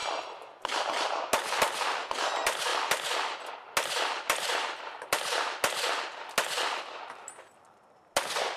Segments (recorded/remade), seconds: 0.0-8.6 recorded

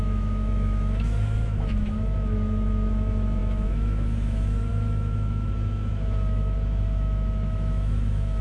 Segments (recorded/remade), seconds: 0.0-8.4 remade

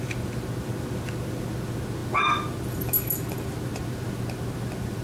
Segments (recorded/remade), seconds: 0.0-5.0 recorded

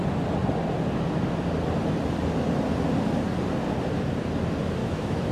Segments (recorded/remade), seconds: 0.0-4.8 recorded; 4.8-5.3 remade

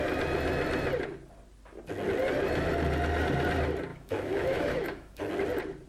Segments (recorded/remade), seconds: 0.0-3.9 recorded; 3.9-5.3 remade; 5.3-5.9 recorded

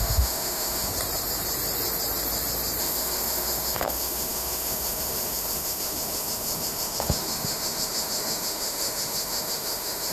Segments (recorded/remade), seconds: 0.0-0.9 remade; 0.9-2.8 recorded; 2.8-10.1 remade

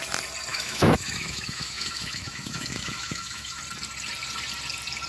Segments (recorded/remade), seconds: 0.0-0.5 recorded; 0.5-3.6 remade; 3.6-5.1 recorded